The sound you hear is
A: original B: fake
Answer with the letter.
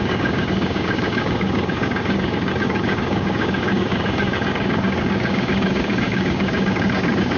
B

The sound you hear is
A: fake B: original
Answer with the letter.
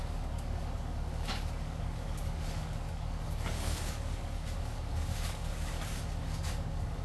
A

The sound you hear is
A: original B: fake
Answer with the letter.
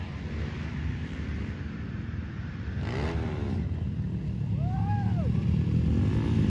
A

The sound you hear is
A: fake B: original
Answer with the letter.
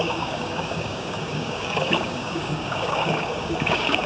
A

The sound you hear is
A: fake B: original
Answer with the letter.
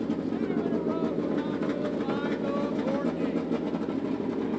B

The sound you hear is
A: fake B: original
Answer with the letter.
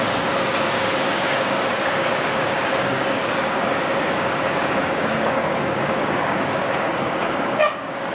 A